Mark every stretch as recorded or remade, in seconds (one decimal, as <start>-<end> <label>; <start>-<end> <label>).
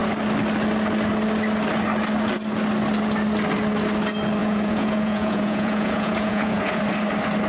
0.0-4.4 recorded; 4.4-6.8 remade; 6.8-7.5 recorded